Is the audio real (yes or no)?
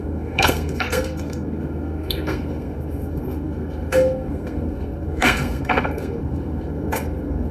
no